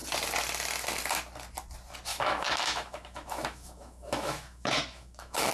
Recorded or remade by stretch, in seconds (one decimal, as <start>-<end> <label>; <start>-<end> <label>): 0.0-2.1 recorded; 2.1-5.5 remade